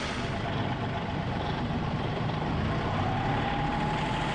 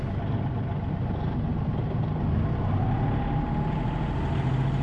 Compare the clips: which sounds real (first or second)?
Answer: second